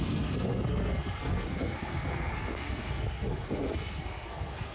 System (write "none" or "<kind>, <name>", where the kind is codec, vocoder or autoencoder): codec, SNAC